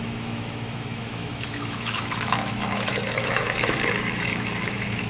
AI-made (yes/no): yes